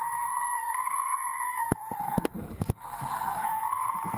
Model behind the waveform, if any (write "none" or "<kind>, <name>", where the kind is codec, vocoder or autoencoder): codec, SNAC